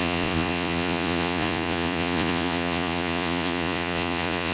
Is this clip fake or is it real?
fake